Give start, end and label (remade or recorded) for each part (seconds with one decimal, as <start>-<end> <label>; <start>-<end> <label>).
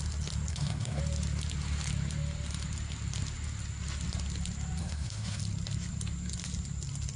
0.0-0.5 recorded; 0.5-1.0 remade; 1.0-4.8 recorded; 4.8-5.4 remade; 5.4-7.2 recorded